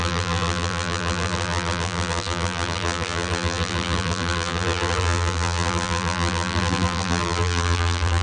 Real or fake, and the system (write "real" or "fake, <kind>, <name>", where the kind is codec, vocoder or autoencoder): fake, vocoder, BigVGAN v2